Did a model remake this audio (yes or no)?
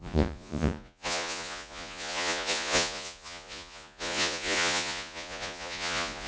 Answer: yes